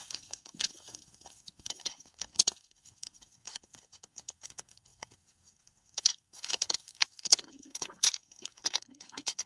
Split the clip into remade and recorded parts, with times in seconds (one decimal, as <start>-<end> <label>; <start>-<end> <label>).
0.0-9.5 remade